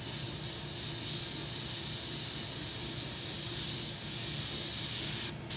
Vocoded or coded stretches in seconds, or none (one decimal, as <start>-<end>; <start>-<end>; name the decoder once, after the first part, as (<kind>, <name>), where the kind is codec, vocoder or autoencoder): none